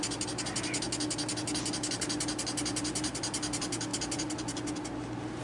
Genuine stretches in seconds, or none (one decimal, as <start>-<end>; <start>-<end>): 0.0-5.4

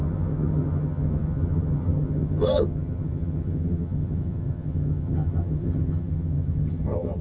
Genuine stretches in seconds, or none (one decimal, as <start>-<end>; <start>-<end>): none

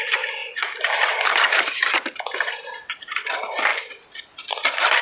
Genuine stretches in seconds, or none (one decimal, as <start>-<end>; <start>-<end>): 0.0-5.0

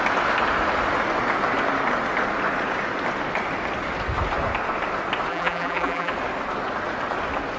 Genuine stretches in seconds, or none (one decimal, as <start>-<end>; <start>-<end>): 0.0-5.3; 6.1-7.6